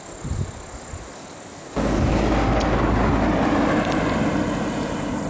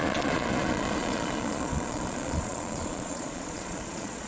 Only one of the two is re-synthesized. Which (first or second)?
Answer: second